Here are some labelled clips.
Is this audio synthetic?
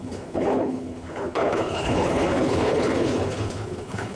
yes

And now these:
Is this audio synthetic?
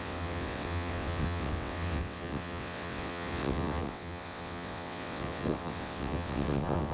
yes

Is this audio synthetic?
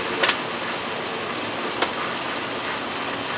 no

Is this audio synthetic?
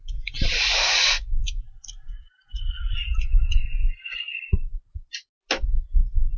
no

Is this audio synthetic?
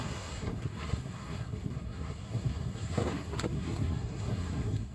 yes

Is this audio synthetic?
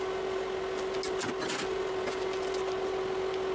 no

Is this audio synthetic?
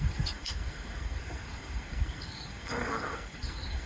yes